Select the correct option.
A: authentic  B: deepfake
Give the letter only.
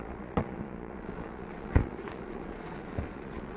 B